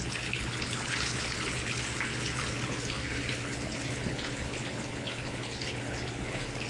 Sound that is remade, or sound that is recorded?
remade